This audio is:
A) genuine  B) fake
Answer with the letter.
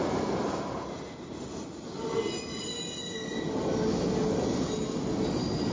A